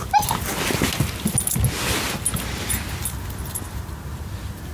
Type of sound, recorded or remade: recorded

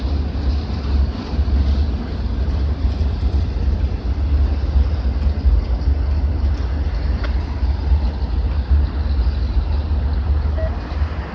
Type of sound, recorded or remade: recorded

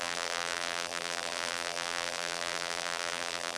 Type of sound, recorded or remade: remade